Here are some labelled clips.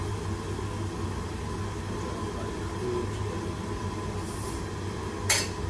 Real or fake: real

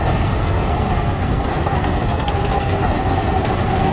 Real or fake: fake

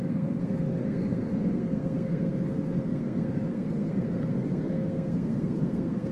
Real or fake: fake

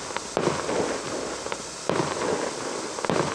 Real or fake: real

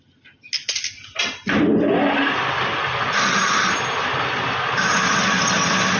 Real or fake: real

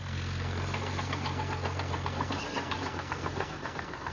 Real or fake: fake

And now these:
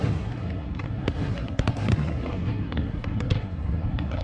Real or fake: fake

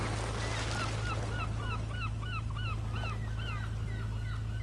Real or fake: real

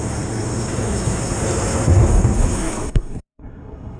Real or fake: fake